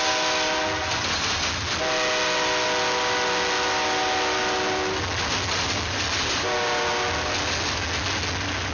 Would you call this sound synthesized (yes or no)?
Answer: no